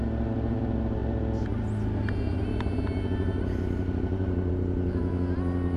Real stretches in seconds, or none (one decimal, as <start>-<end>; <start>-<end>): 0.0-5.8